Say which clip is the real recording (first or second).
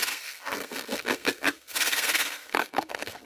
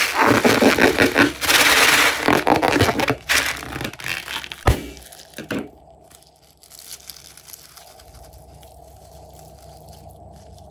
second